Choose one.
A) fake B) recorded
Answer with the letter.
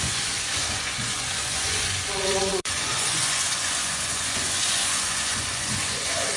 A